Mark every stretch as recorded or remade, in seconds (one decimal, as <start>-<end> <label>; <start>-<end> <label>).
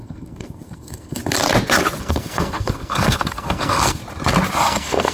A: 0.0-1.2 remade; 1.2-2.0 recorded; 2.0-4.0 remade; 4.0-4.6 recorded; 4.6-5.1 remade